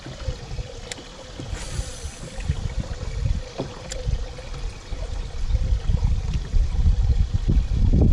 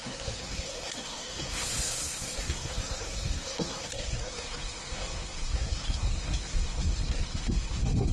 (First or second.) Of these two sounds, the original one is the first